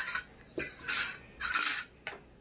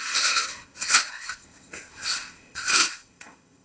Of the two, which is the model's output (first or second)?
second